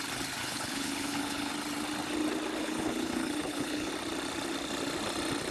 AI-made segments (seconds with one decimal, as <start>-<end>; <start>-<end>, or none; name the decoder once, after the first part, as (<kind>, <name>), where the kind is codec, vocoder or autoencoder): 0.4-1.5 (codec, HILCodec); 2.6-3.9